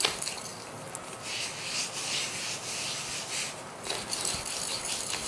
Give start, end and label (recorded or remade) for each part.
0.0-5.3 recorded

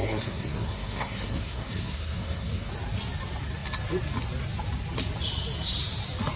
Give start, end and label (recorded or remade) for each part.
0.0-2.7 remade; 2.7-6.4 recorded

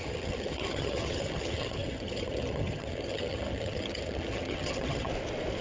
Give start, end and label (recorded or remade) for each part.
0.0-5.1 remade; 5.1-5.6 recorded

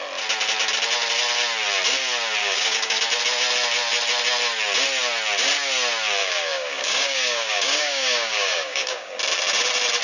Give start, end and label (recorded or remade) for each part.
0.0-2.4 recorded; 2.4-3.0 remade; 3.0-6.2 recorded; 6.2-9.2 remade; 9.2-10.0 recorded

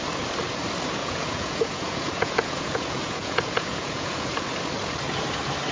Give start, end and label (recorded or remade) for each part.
0.0-1.0 recorded; 1.0-4.4 remade; 4.4-5.7 recorded

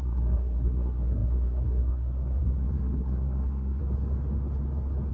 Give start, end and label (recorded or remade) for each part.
0.0-3.8 remade; 3.8-5.1 recorded

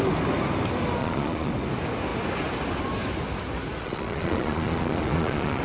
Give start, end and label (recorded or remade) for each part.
0.0-1.0 recorded; 1.0-1.5 remade; 1.5-3.8 recorded; 3.8-5.6 remade

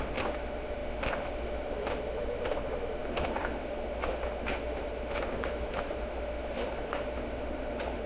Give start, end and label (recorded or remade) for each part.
0.0-8.1 remade